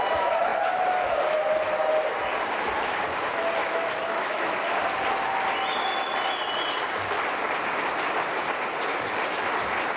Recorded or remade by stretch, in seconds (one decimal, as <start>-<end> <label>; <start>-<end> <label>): 0.0-3.6 recorded; 3.6-4.8 remade; 4.8-10.0 recorded